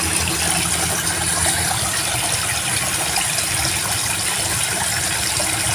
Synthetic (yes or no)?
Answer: no